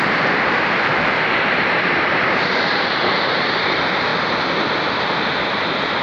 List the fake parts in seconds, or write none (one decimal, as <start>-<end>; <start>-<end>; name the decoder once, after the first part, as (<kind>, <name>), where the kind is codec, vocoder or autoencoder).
0.0-4.1 (vocoder, BigVGAN v2); 4.7-6.0